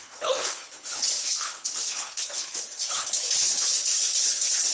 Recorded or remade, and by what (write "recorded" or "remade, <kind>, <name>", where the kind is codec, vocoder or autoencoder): remade, codec, HILCodec